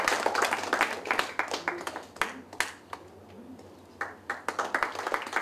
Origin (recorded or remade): recorded